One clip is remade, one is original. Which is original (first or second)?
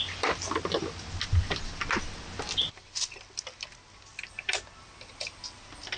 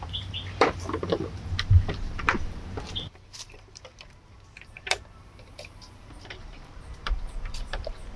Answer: first